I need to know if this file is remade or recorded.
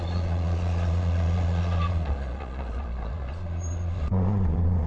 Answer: remade